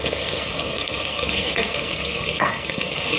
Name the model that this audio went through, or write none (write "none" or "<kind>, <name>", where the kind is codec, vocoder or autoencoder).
codec, SNAC